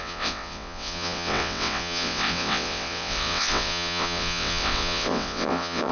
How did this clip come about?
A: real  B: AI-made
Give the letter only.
B